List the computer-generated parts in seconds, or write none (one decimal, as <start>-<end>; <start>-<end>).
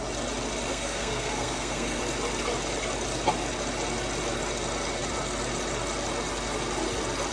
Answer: 0.7-2.0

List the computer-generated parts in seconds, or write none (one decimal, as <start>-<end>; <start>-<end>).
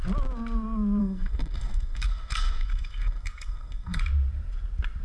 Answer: 1.0-4.0